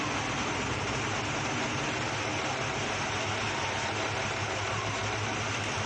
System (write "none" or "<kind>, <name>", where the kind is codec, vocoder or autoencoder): none